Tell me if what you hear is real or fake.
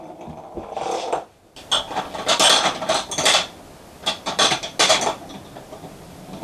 real